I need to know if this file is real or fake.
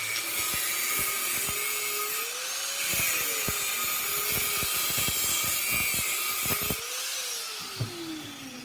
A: real